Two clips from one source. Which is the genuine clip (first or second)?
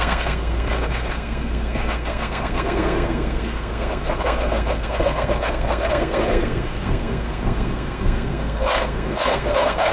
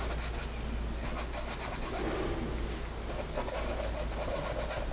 second